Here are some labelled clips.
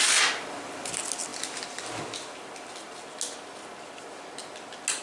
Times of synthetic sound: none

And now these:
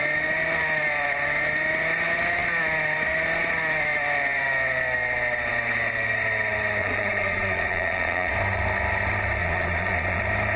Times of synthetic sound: 6.8-8.3 (vocoder, Vocos); 9.4-10.2

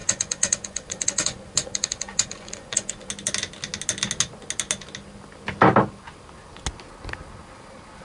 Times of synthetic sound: 0.0-3.1 (vocoder, Vocos)

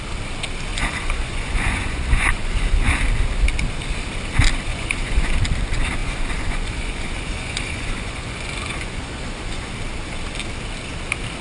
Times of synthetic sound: 0.7-3.0 (vocoder, Vocos); 4.7-5.3; 6.0-9.7

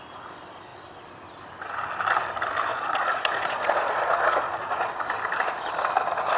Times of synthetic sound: 2.7-4.9 (vocoder, Vocos)

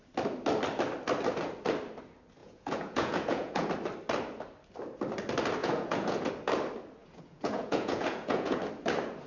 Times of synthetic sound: 2.4-3.7 (vocoder, Vocos); 5.6-6.3; 7.0-8.6